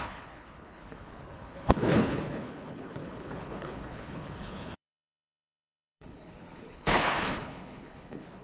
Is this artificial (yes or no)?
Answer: yes